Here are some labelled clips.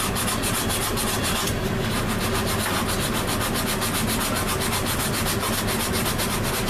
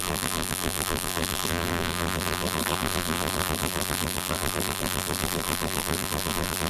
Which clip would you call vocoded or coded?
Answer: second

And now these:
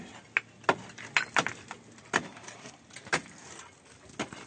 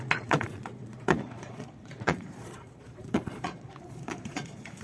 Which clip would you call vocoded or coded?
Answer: second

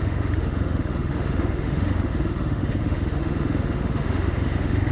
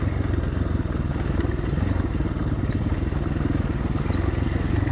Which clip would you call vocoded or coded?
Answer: first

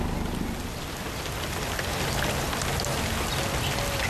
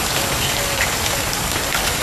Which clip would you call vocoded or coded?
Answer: second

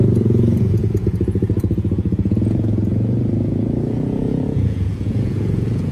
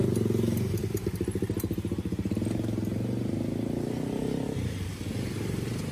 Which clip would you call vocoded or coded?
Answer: first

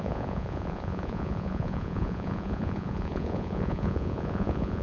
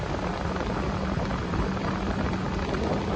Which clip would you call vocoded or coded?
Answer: first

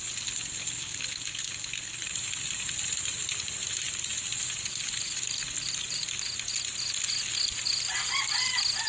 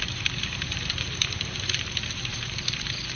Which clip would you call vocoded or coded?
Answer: second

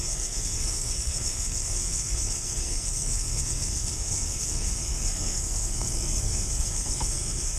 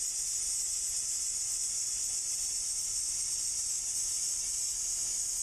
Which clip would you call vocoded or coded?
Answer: first